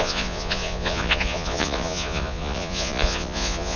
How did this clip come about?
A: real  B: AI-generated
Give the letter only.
B